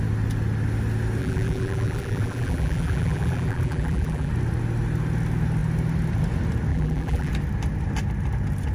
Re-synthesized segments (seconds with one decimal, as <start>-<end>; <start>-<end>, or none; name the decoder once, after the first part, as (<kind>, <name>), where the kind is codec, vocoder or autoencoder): 1.2-4.3 (vocoder, BigVGAN v2); 6.7-7.3